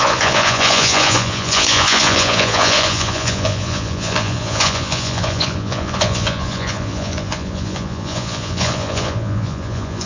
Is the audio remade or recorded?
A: remade